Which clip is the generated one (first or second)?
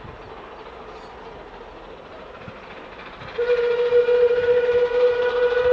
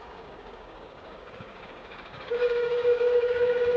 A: second